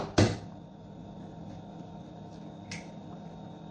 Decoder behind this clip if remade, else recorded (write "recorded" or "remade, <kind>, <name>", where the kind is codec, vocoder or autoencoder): recorded